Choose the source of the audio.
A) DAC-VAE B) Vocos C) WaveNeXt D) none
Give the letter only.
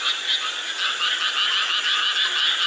D